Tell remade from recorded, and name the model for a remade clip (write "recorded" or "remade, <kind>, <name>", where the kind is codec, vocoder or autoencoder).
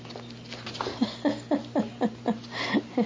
recorded